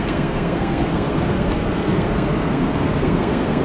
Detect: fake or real fake